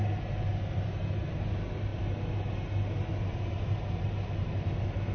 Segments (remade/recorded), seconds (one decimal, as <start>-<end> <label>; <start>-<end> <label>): 0.0-5.1 recorded